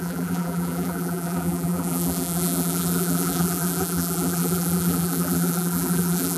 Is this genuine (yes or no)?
no